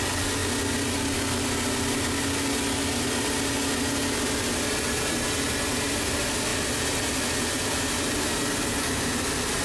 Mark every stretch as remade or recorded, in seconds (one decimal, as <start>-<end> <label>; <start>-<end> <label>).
0.0-9.6 recorded

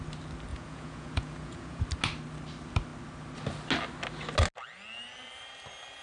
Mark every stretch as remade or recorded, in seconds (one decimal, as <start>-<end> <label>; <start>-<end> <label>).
0.0-0.5 recorded; 0.5-1.8 remade; 1.8-6.0 recorded

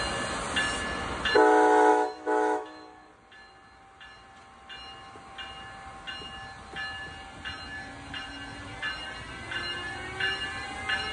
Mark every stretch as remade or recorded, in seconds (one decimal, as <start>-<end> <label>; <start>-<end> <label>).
0.0-1.9 recorded; 1.9-3.1 remade; 3.1-11.1 recorded

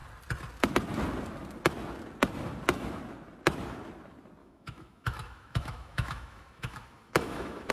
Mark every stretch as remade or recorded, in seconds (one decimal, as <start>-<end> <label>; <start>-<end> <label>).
0.0-4.4 recorded; 4.4-7.7 remade